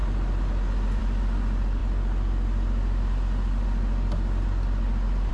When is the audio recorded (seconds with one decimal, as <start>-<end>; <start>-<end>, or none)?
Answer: 0.0-5.3